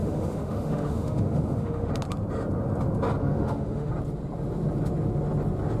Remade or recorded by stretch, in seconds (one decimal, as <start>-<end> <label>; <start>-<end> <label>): 0.0-1.9 remade; 1.9-3.2 recorded; 3.2-3.9 remade; 3.9-5.8 recorded